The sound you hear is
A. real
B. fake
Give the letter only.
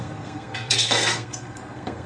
B